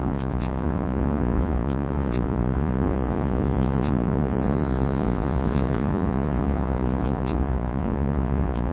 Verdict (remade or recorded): remade